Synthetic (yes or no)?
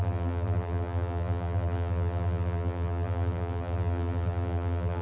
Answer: yes